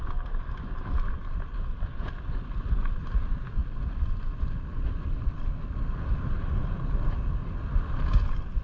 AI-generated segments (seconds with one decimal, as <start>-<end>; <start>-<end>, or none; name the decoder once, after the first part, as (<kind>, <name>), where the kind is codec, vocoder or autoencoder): none